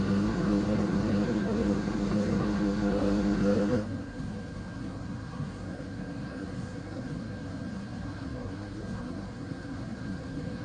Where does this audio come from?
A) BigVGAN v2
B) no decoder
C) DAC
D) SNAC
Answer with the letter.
D